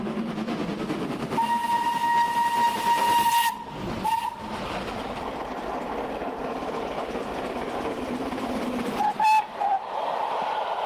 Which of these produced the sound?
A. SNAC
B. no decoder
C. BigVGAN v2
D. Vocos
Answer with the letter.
B